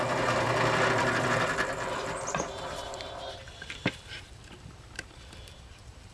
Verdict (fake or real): fake